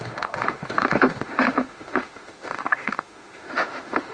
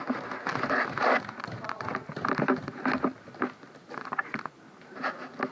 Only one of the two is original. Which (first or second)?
second